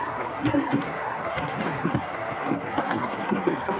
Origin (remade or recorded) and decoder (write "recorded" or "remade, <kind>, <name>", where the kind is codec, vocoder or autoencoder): remade, codec, SNAC